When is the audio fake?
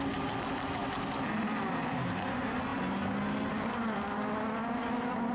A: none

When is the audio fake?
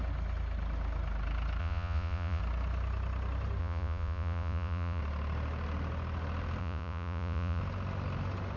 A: 1.6-2.4 (vocoder, Vocos); 3.6-5.0; 6.6-7.6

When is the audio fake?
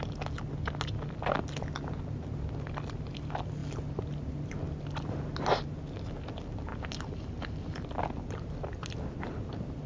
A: none